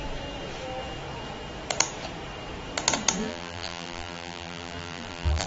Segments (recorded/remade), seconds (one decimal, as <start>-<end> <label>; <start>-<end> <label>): 0.0-3.2 recorded; 3.2-5.5 remade